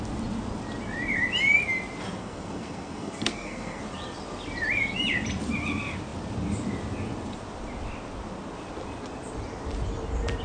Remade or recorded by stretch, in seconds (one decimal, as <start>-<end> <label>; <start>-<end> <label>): 0.0-2.2 recorded; 2.2-3.8 remade; 3.8-10.4 recorded